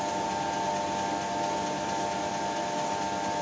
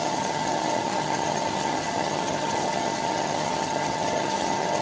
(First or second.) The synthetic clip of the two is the second